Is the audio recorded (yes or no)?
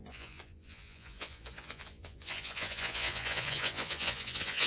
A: no